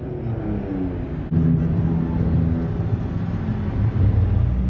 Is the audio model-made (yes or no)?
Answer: no